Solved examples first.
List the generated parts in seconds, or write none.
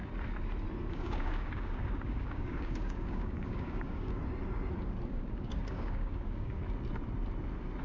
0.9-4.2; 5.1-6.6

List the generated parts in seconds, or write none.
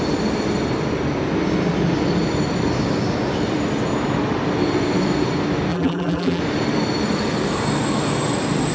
5.7-6.4